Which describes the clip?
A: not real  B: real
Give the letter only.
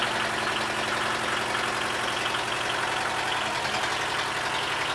B